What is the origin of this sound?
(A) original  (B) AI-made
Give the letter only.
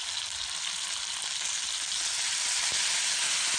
A